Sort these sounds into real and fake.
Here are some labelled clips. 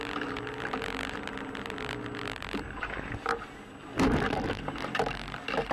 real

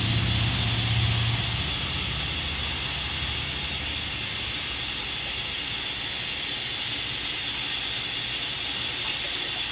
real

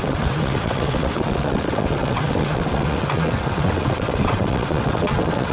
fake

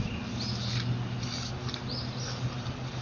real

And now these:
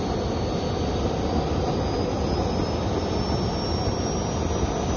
real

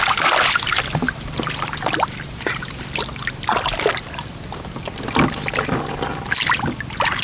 real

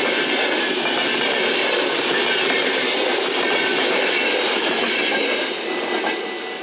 real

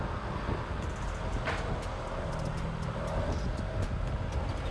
real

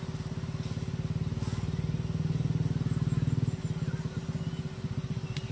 real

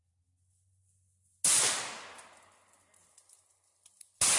real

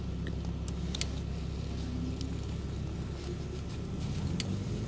real